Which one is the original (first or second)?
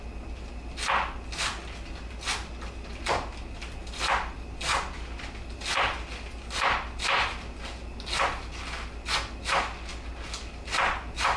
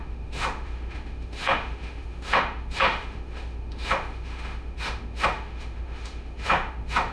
first